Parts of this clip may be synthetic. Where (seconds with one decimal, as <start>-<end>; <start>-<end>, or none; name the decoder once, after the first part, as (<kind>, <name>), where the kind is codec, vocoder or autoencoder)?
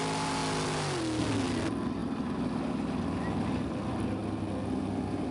none